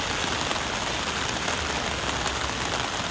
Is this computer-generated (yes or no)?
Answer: no